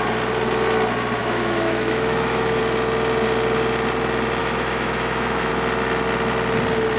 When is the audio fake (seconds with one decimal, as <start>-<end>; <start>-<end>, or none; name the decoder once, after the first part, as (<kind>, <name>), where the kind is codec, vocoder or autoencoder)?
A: 1.2-2.6 (autoencoder, DAC-VAE); 4.4-5.5